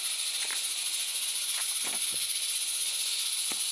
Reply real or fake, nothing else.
fake